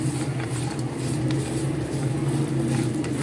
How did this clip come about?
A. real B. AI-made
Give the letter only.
A